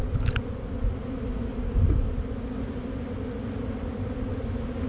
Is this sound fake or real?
real